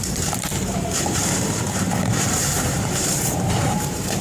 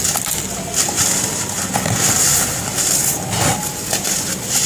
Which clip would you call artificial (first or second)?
first